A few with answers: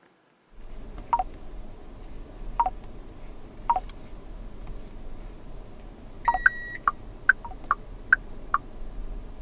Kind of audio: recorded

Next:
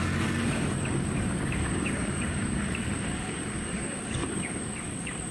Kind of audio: remade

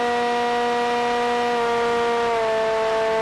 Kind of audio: recorded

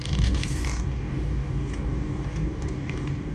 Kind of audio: remade